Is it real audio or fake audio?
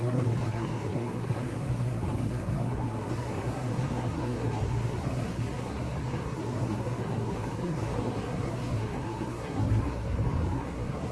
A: fake